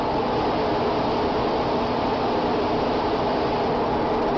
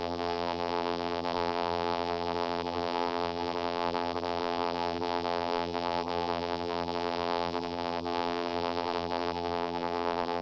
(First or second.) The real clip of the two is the first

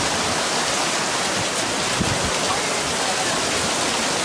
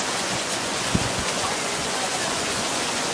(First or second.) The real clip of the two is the first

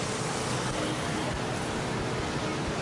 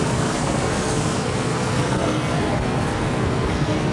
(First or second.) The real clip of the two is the first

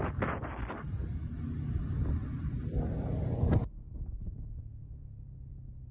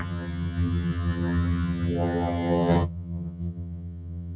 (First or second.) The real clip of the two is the first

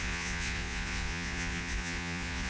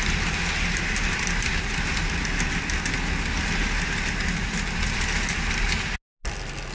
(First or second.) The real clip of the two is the second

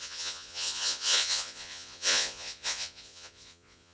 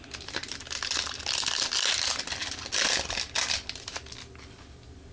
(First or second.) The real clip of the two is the second